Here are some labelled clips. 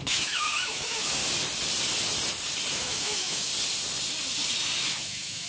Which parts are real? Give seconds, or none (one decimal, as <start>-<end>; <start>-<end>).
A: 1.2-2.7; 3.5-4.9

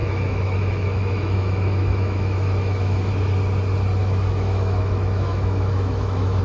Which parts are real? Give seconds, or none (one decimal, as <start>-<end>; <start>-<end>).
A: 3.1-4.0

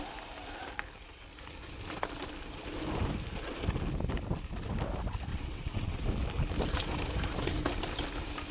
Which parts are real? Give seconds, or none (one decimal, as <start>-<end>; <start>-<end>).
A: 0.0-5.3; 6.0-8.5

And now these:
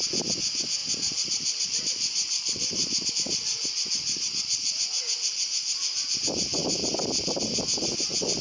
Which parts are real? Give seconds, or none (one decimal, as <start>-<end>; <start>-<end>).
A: 0.0-0.8; 3.1-8.4

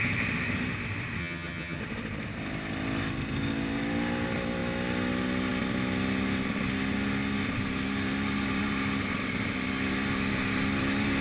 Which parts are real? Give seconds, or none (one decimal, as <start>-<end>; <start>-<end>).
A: 0.0-1.2; 1.8-11.2

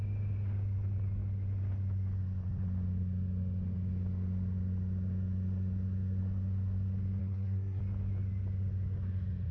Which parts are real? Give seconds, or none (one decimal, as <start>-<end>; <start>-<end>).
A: 0.0-7.2; 7.8-9.5

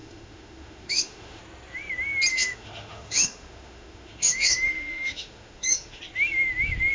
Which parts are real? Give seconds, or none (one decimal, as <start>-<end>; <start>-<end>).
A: 1.4-2.3; 6.0-6.9

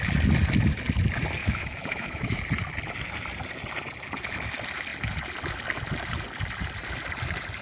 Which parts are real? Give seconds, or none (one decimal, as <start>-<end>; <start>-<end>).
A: 0.0-1.4; 2.4-7.6